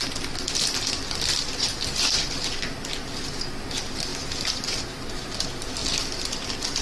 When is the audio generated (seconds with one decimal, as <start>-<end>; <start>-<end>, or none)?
none